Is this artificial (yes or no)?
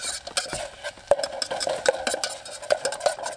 no